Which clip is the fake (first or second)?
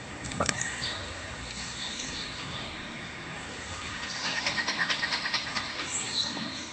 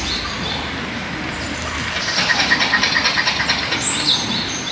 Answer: first